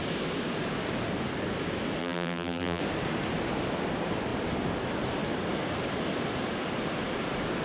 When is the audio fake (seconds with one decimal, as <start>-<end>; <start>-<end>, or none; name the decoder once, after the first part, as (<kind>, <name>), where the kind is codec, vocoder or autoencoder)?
2.0-2.8 (vocoder, BigVGAN v2)